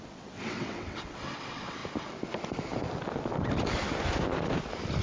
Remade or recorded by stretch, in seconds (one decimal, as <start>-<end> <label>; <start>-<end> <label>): 0.0-1.8 remade; 1.8-5.0 recorded